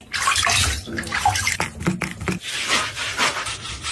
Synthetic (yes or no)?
no